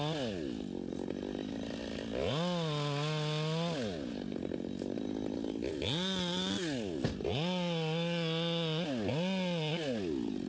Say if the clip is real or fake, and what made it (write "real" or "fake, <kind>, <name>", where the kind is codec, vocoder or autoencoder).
real